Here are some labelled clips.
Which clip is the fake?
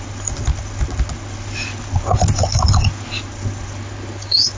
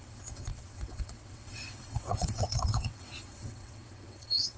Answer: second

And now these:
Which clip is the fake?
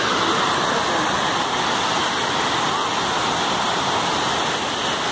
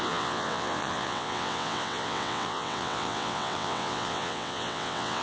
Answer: second